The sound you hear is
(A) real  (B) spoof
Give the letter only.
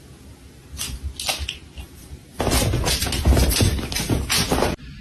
A